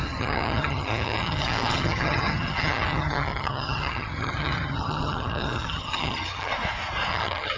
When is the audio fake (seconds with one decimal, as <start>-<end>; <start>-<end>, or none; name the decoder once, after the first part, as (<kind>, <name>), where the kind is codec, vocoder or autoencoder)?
0.0-6.5 (vocoder, HiFi-GAN); 7.1-7.6